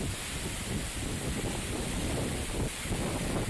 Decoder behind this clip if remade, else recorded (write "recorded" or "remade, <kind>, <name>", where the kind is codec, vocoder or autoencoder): recorded